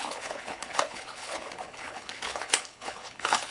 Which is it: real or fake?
fake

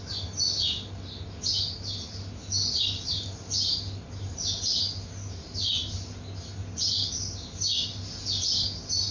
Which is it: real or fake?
real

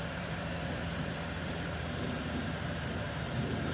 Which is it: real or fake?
fake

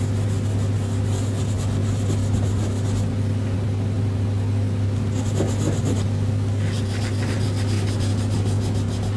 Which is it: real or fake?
real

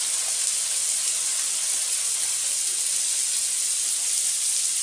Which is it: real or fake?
real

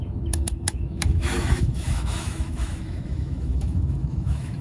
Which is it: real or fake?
fake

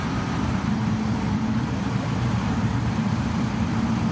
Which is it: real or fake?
fake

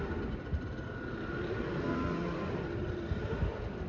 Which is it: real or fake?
real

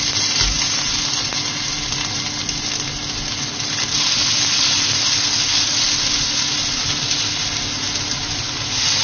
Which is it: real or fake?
real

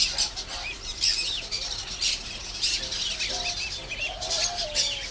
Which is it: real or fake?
real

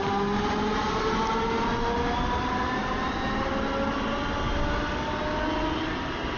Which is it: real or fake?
real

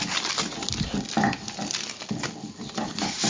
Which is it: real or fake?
real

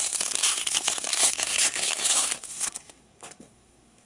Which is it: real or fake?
fake